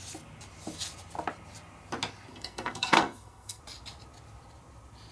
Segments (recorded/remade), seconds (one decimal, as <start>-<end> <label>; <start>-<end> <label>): 0.0-2.3 recorded; 2.3-3.6 remade; 3.6-5.1 recorded